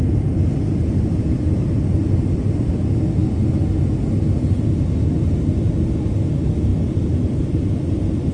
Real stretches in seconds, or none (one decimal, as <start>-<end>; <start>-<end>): 3.2-5.0